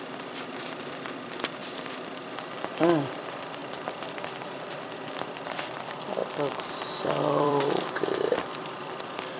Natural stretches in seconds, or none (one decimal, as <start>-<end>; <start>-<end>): 6.2-7.1